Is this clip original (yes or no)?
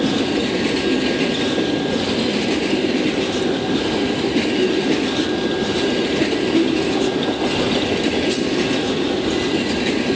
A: yes